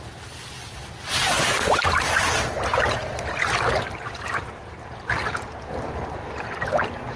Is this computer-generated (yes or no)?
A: no